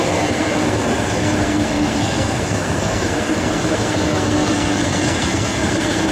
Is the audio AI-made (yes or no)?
yes